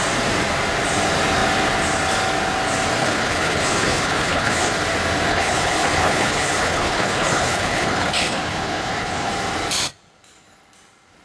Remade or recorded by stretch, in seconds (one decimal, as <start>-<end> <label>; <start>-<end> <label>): 0.0-3.0 recorded; 3.0-4.7 remade; 4.7-5.3 recorded; 5.3-9.3 remade; 9.3-11.2 recorded